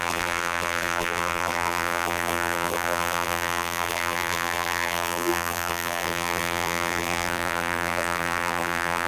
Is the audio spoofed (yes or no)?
yes